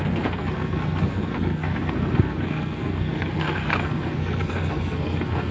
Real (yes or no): no